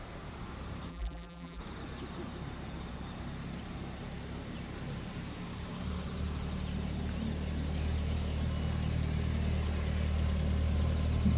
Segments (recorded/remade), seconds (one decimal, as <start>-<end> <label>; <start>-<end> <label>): 0.0-0.9 recorded; 0.9-1.6 remade; 1.6-11.4 recorded